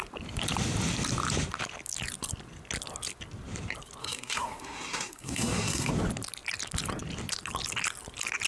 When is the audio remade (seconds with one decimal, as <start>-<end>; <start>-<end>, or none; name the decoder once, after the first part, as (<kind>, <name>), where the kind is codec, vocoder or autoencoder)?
4.0-5.9 (codec, SNAC)